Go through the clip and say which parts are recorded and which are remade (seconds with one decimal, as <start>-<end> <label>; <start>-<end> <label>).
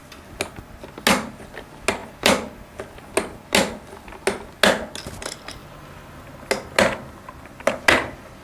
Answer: 0.0-8.4 recorded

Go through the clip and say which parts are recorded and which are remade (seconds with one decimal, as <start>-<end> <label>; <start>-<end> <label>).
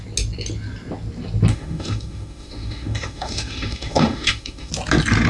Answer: 0.0-1.5 recorded; 1.5-4.7 remade; 4.7-5.3 recorded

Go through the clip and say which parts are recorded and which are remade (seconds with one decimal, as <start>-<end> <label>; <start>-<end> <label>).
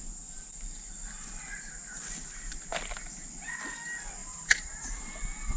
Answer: 0.0-4.2 recorded; 4.2-5.0 remade; 5.0-5.6 recorded